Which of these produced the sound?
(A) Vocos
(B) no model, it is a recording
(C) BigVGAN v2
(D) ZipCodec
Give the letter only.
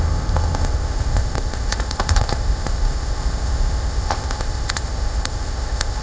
D